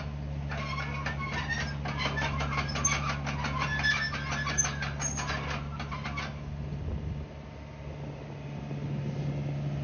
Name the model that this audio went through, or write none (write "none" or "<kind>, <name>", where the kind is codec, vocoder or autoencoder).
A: none